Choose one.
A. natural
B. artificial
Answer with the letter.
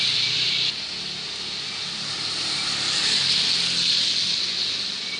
A